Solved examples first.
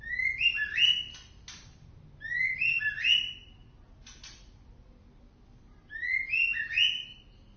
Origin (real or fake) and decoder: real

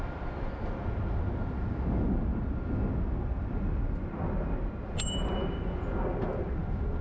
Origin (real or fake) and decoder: real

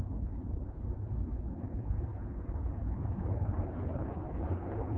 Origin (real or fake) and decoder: fake, codec, HILCodec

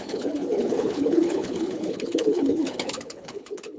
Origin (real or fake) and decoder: fake, codec, HILCodec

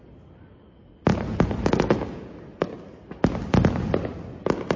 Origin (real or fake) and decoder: real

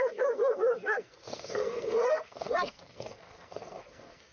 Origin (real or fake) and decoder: fake, codec, SNAC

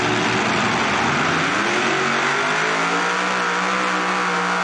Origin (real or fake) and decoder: real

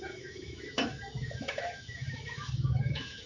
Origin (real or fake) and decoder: fake, autoencoder, DAC-VAE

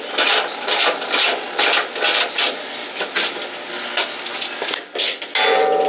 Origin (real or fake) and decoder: real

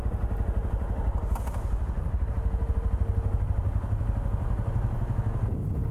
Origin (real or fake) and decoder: real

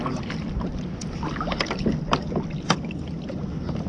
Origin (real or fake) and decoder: real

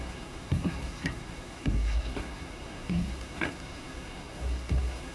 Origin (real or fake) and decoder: fake, codec, SNAC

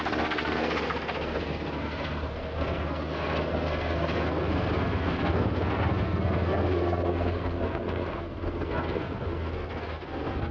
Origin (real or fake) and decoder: fake, codec, SNAC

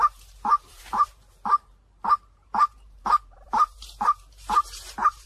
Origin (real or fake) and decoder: fake, vocoder, BigVGAN v2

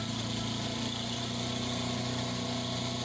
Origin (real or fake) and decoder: real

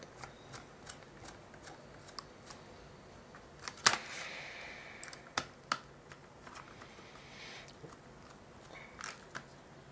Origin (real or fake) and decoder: real